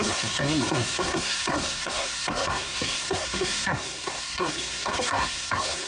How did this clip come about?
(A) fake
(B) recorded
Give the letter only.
A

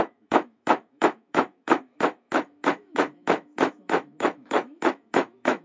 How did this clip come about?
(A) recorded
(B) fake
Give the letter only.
B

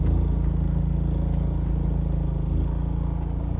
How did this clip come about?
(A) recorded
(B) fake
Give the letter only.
A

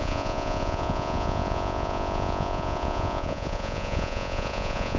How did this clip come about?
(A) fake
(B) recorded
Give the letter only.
A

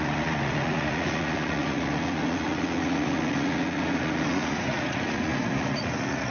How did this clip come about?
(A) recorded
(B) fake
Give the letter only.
B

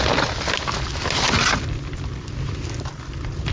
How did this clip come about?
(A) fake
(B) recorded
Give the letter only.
B